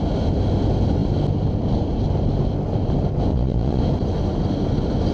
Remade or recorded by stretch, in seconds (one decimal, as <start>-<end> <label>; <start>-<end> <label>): 0.0-3.3 recorded; 3.3-3.8 remade; 3.8-5.1 recorded